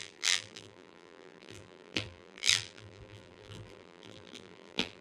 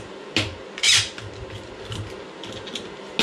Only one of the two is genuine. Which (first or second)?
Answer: second